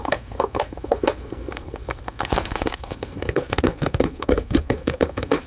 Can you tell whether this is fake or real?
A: fake